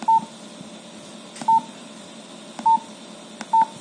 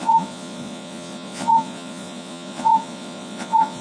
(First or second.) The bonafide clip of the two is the first